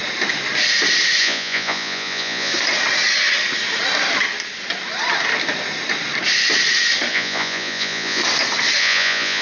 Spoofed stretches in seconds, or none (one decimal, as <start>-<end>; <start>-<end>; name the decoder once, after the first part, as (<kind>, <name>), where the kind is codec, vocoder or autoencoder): 1.2-2.5 (vocoder, Vocos); 7.1-8.2; 8.8-9.4